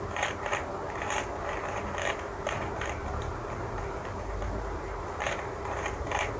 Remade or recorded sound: remade